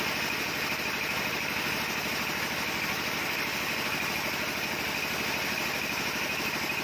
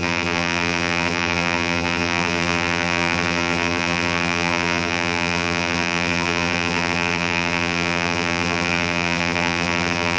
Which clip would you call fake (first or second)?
second